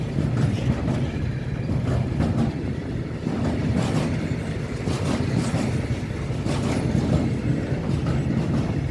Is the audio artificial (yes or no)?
no